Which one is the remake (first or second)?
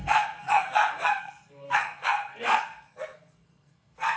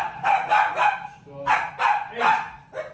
first